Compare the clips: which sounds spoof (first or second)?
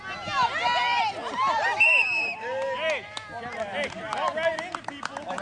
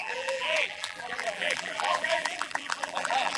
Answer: second